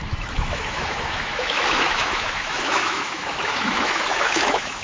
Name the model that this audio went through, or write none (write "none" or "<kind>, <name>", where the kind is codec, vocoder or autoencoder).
autoencoder, DAC-VAE